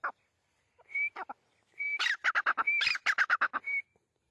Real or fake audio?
real